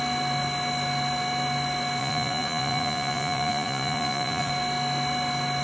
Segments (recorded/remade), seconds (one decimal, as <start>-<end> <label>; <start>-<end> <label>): 0.0-2.0 recorded; 2.0-4.5 remade; 4.5-5.6 recorded